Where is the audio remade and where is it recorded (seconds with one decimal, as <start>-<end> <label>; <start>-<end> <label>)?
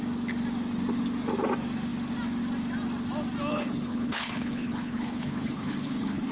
0.0-3.5 recorded; 3.5-6.3 remade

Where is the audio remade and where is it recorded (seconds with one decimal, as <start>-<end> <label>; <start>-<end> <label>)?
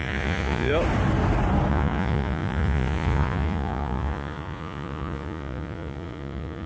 0.0-0.7 remade; 0.7-1.7 recorded; 1.7-6.7 remade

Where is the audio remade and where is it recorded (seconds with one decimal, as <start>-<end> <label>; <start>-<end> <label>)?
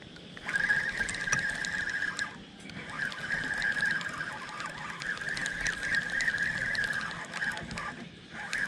0.0-8.7 recorded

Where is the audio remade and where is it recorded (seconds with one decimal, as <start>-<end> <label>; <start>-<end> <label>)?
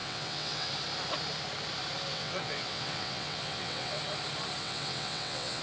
0.0-0.7 remade; 0.7-2.1 recorded; 2.1-4.0 remade; 4.0-4.6 recorded; 4.6-5.6 remade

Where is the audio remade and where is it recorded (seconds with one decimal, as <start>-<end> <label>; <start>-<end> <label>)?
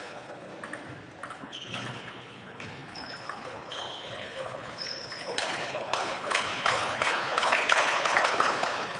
0.0-0.5 remade; 0.5-1.3 recorded; 1.3-9.0 remade